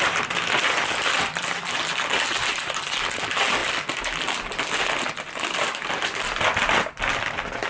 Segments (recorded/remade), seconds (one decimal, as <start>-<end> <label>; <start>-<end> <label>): 0.0-7.7 recorded